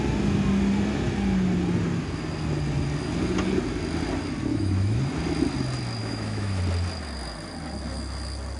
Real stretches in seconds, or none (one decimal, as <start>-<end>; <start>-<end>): 0.0-4.5; 5.0-6.0; 6.6-8.6